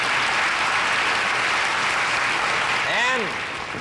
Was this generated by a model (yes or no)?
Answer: no